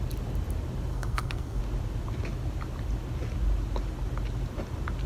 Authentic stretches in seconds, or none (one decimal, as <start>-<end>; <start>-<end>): 0.0-0.9; 1.6-5.1